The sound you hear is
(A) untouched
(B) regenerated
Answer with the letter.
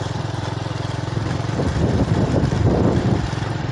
B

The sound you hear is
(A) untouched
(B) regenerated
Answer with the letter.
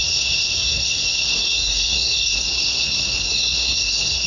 B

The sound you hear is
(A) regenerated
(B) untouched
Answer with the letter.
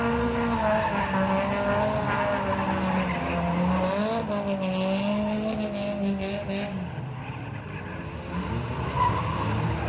B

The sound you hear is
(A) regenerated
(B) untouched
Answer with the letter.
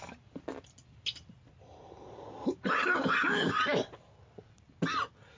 B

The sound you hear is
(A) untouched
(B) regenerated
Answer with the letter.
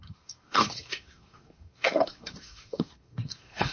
B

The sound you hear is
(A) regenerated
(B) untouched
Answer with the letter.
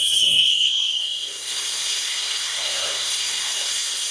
A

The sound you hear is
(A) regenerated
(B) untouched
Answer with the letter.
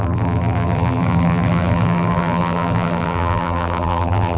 A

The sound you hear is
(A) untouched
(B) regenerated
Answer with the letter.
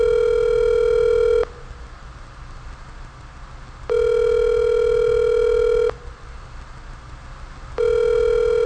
A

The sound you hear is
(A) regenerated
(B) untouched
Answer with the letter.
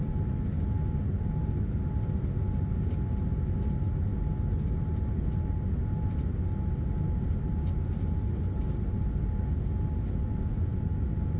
B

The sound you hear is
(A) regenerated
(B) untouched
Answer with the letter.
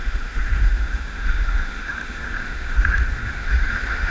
A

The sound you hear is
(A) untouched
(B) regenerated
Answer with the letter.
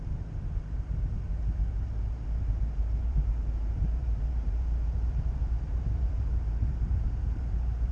B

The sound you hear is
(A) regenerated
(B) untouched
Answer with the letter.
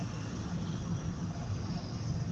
B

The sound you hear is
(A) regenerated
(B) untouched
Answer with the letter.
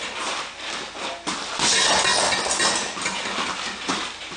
B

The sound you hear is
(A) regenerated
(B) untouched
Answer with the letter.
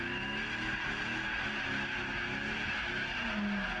B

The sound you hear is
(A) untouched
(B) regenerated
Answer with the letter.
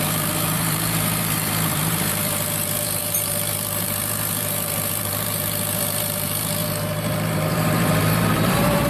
B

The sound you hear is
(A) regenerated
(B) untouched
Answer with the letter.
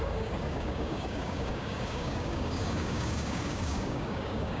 A